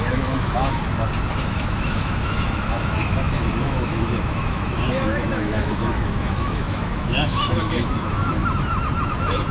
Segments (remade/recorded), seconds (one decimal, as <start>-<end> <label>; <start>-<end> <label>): 0.0-0.8 remade; 0.8-1.4 recorded; 1.4-8.4 remade; 8.4-9.0 recorded; 9.0-9.5 remade